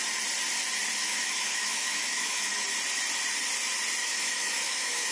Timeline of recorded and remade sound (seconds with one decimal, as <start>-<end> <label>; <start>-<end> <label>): 0.0-1.0 recorded; 1.0-2.5 remade; 2.5-4.0 recorded; 4.0-5.1 remade